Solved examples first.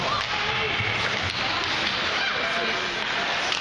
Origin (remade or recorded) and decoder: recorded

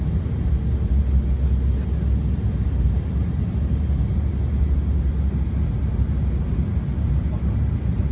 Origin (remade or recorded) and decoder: recorded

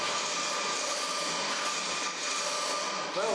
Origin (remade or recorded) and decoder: recorded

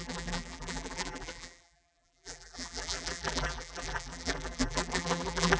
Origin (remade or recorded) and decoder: remade, vocoder, BigVGAN v2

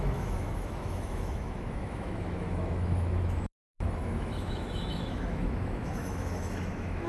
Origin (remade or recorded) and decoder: remade, autoencoder, DAC-VAE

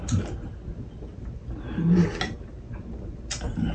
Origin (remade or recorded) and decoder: recorded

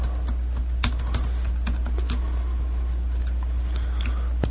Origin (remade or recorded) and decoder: recorded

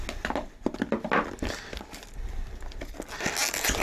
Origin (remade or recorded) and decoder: recorded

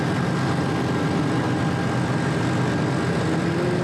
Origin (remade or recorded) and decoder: recorded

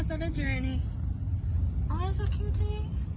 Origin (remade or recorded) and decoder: recorded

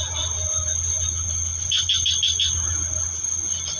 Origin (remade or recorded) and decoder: recorded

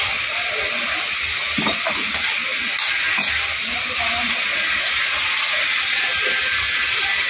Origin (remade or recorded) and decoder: recorded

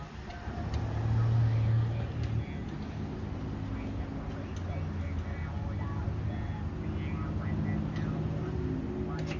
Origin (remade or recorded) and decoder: recorded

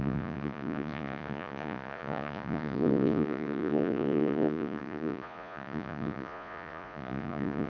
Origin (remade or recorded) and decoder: remade, vocoder, Vocos